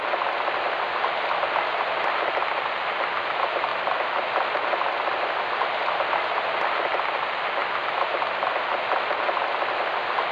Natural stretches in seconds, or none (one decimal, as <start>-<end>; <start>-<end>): 0.0-10.3